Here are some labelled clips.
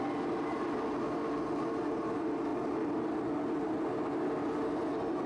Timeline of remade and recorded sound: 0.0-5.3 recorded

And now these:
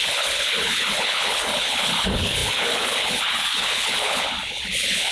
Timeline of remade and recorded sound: 0.0-5.1 remade

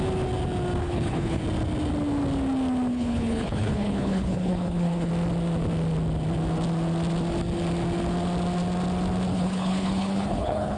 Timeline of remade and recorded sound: 0.0-0.8 recorded; 0.8-1.4 remade; 1.4-2.9 recorded; 2.9-5.1 remade; 5.1-9.3 recorded; 9.3-10.8 remade

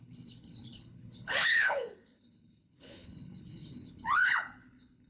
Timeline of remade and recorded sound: 0.0-5.1 remade

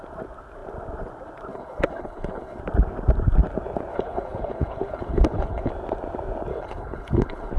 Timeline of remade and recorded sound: 0.0-1.5 recorded; 1.5-2.6 remade; 2.6-3.9 recorded; 3.9-5.7 remade; 5.7-6.5 recorded; 6.5-7.6 remade

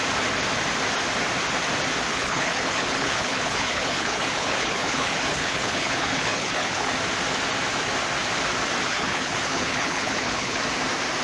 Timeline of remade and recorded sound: 0.0-2.1 recorded; 2.1-6.9 remade; 6.9-8.9 recorded; 8.9-10.6 remade; 10.6-11.2 recorded